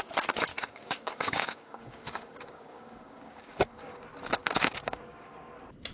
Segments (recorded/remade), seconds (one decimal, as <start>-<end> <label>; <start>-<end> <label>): 0.0-0.5 recorded; 0.5-4.0 remade; 4.0-4.4 recorded; 4.4-5.5 remade; 5.5-5.9 recorded